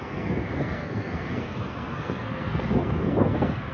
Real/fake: fake